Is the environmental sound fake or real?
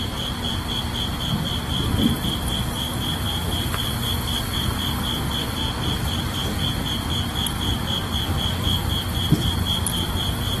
real